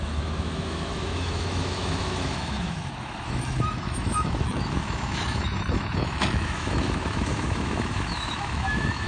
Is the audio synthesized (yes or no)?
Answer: yes